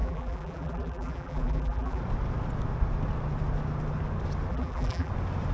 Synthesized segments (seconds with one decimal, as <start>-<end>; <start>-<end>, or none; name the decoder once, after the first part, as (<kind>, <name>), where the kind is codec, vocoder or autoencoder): 0.0-2.0 (vocoder, BigVGAN v2); 4.5-5.1